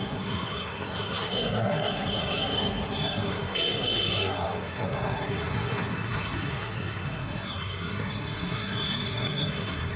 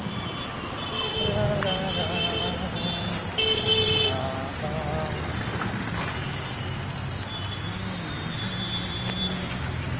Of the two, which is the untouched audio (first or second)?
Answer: second